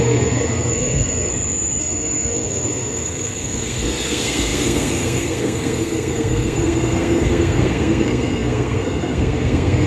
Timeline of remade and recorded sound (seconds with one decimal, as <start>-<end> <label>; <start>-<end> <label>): 0.0-1.3 remade; 1.3-1.8 recorded; 1.8-9.9 remade